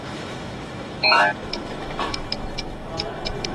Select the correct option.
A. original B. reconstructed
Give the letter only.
B